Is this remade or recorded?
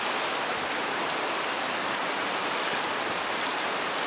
recorded